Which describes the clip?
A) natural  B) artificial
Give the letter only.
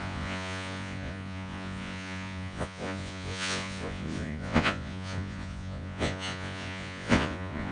B